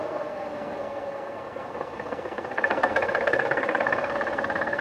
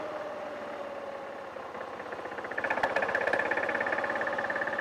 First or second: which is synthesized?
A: first